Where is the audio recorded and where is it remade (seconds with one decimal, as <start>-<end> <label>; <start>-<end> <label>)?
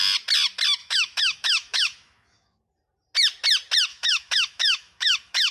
0.0-0.8 recorded; 0.8-2.6 remade; 2.6-3.9 recorded; 3.9-5.5 remade